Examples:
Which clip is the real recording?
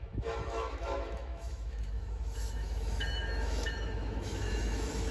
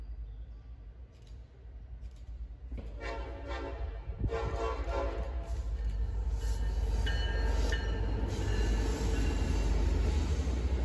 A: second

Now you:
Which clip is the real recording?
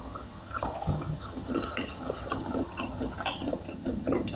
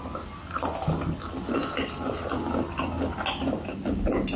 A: second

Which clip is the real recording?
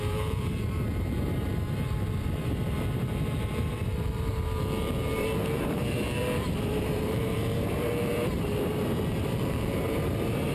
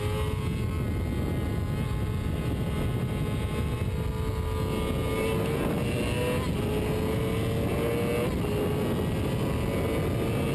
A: second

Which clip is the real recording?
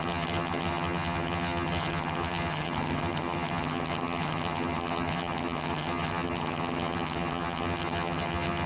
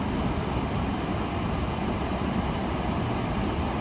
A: second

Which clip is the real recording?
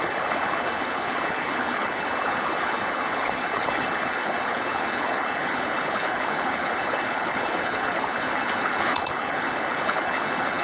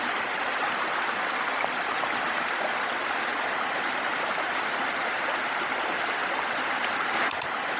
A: second